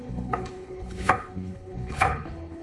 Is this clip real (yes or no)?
no